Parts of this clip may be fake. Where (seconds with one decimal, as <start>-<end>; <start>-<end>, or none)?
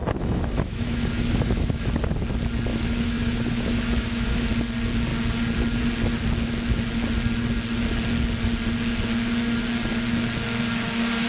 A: 0.0-1.9; 2.7-4.5